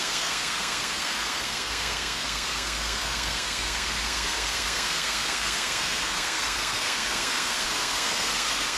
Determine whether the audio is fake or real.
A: fake